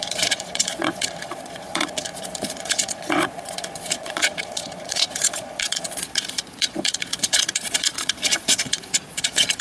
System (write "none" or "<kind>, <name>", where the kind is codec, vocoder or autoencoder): vocoder, Vocos